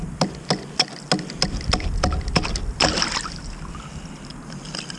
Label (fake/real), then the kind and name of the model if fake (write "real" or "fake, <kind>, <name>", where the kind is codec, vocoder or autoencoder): real